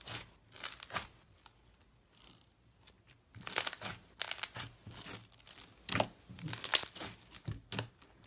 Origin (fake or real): real